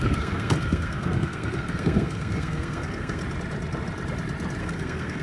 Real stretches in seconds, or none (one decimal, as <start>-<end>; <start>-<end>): 3.2-4.6